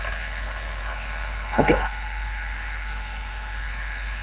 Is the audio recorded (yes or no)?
no